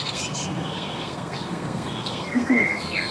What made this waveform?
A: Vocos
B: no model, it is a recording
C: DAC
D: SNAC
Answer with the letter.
D